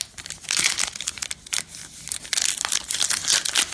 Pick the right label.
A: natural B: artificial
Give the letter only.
A